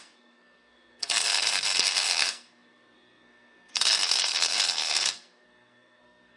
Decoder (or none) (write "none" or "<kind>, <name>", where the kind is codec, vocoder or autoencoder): codec, SNAC